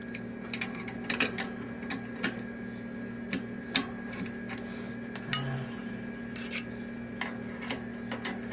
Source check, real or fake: real